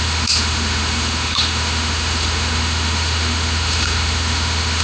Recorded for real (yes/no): no